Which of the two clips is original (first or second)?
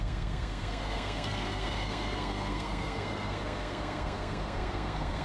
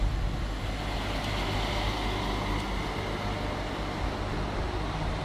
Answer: second